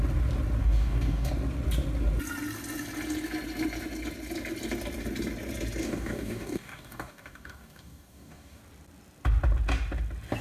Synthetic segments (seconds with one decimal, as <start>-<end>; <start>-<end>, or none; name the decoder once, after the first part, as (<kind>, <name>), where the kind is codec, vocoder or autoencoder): 0.6-1.3 (codec, DAC); 5.8-8.6

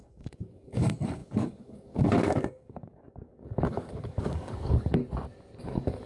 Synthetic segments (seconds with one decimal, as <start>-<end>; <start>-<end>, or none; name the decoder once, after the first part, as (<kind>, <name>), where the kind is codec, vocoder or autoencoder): 0.0-5.0 (codec, DAC); 5.6-6.1

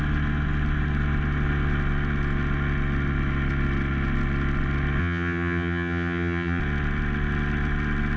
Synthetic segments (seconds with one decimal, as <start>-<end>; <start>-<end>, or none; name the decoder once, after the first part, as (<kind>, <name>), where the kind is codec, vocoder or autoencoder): 5.0-6.6 (vocoder, HiFi-GAN)

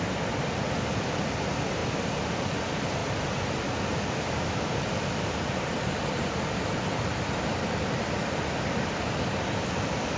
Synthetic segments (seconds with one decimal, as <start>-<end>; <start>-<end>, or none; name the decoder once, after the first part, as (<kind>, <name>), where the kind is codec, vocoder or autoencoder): 0.0-3.0 (vocoder, BigVGAN v2); 4.0-10.2

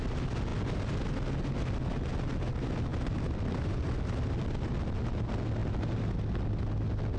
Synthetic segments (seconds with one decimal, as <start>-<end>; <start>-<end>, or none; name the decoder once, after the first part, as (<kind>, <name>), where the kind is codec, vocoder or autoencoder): none

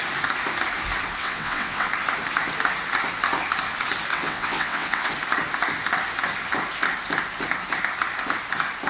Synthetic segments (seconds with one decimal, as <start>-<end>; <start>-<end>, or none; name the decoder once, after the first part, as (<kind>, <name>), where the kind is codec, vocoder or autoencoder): 1.2-1.9 (vocoder, WaveNeXt); 4.1-5.1

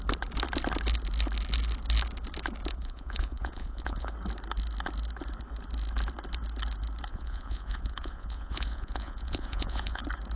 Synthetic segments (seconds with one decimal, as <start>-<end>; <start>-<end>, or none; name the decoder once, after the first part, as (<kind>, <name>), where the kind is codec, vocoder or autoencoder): 2.7-4.1 (vocoder, Vocos); 7.1-10.0